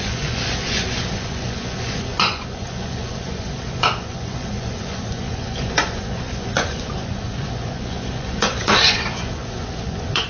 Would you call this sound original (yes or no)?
no